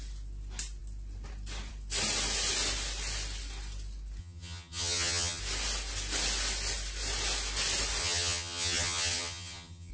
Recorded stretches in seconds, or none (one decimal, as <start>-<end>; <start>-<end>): 0.0-4.2; 5.4-8.0